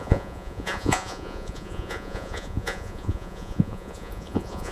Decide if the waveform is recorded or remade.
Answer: remade